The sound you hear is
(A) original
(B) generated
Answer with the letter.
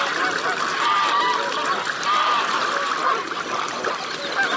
A